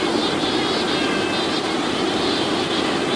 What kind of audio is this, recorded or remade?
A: recorded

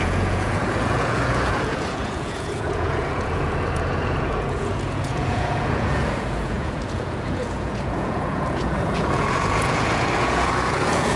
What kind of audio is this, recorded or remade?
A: remade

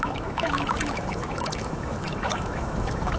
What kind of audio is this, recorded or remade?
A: remade